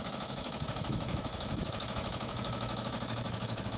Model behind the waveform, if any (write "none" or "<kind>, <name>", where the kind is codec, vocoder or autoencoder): autoencoder, DAC-VAE